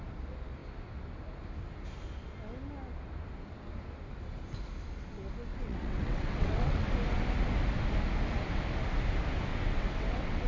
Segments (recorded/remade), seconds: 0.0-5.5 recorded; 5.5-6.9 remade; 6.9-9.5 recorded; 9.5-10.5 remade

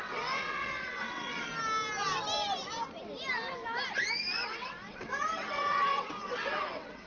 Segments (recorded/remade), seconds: 0.0-1.5 remade; 1.5-4.3 recorded; 4.3-7.1 remade

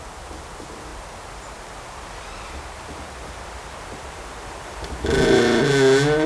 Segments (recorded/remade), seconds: 0.0-6.3 recorded